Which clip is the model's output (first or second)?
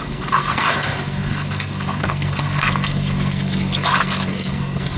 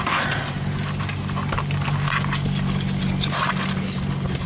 first